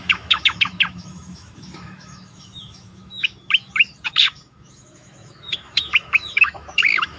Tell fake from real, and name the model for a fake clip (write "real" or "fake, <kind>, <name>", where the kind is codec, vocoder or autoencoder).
fake, autoencoder, DAC-VAE